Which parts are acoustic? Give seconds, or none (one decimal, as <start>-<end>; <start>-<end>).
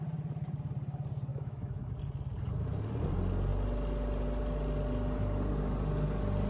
0.0-1.3; 1.9-6.5